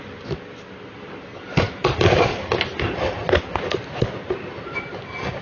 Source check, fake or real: real